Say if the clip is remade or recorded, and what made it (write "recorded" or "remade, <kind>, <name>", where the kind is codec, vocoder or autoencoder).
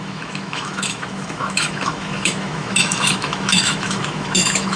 remade, autoencoder, DAC-VAE